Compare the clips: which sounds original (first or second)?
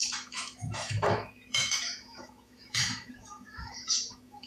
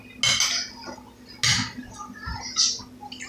second